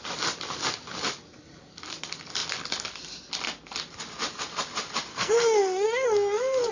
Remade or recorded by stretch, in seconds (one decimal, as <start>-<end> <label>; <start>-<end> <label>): 0.0-5.1 recorded; 5.1-6.7 remade